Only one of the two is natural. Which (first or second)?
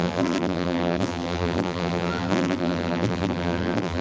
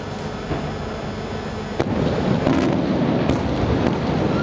second